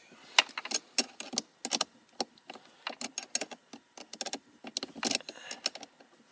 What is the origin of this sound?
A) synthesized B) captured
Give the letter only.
B